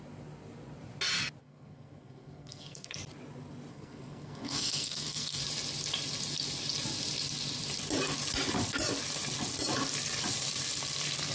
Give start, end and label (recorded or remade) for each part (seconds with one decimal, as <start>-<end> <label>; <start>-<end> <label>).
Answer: 0.0-1.4 recorded; 1.4-3.0 remade; 3.0-3.7 recorded; 3.7-5.4 remade; 5.4-11.3 recorded

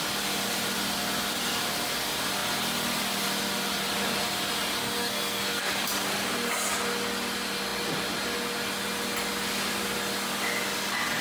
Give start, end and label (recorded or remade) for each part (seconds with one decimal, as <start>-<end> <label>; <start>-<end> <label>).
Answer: 0.0-4.8 recorded; 4.8-5.7 remade; 5.7-11.2 recorded

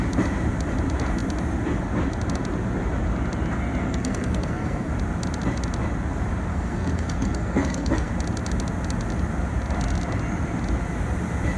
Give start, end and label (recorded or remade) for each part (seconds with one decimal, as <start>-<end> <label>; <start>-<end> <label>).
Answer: 0.0-3.8 recorded; 3.8-4.9 remade; 4.9-6.5 recorded; 6.5-8.1 remade; 8.1-11.6 recorded

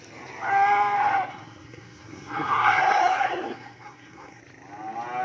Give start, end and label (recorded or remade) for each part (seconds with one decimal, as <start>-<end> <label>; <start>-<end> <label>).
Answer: 0.0-1.3 recorded; 1.3-4.4 remade; 4.4-5.2 recorded

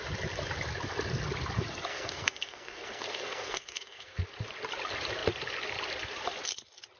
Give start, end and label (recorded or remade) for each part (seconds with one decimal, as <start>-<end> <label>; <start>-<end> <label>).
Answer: 0.0-1.9 recorded; 1.9-4.2 remade; 4.2-7.0 recorded

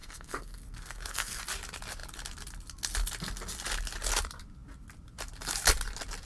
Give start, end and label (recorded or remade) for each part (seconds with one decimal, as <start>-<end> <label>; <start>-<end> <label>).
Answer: 0.0-1.4 remade; 1.4-6.3 recorded

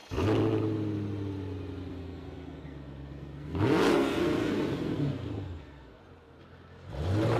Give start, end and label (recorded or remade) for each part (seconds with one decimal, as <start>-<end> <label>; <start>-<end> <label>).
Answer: 0.0-1.9 recorded; 1.9-6.0 remade; 6.0-7.4 recorded

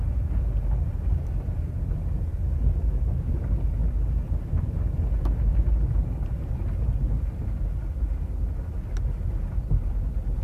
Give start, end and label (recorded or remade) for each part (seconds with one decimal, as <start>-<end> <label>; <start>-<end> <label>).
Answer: 0.0-10.4 recorded